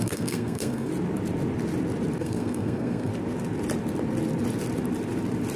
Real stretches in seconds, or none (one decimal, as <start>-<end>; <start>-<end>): 0.9-2.2; 3.1-5.6